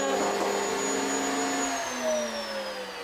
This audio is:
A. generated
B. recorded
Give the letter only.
B